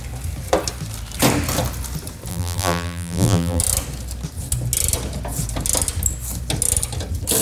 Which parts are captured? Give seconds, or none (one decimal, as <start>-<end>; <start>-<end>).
0.0-2.3; 3.6-7.4